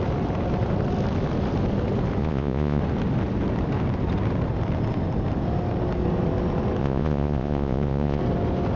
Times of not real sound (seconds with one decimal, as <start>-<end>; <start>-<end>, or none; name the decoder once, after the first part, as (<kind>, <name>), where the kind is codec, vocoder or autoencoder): 2.2-2.8 (vocoder, Vocos); 6.8-8.2